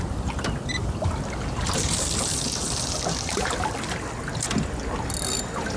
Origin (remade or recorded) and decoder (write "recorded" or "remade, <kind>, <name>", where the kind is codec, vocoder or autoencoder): recorded